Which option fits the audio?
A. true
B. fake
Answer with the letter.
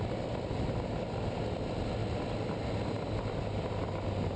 A